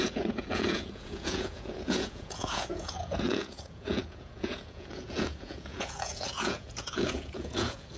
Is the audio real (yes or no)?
no